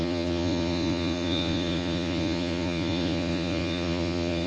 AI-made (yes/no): yes